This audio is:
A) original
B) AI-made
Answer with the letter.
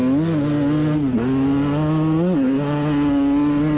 A